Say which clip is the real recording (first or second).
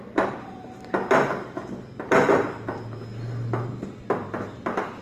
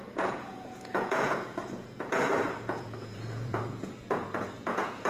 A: first